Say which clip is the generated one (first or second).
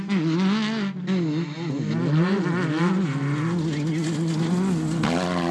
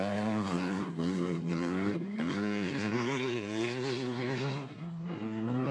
second